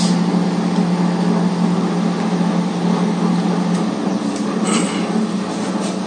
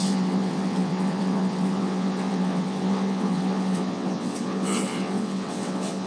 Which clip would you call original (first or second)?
first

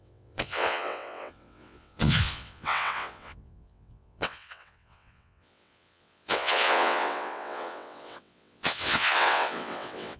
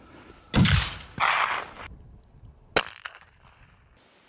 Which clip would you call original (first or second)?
second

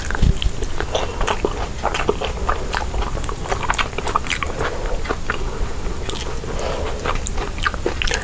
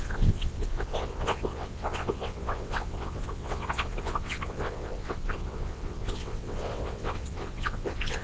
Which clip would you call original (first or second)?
first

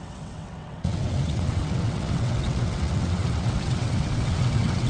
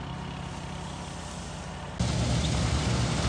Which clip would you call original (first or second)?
second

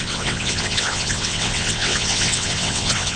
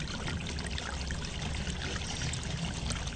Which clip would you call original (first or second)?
second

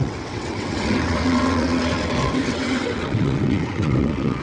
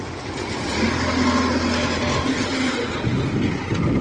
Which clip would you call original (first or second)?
second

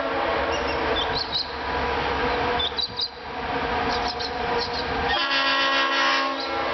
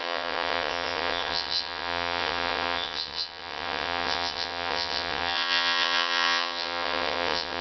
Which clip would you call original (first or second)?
first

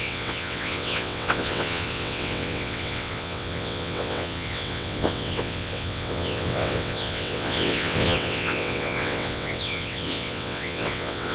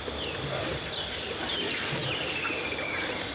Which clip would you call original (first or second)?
second